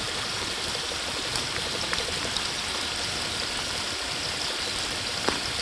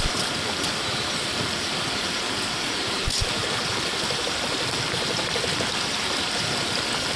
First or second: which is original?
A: first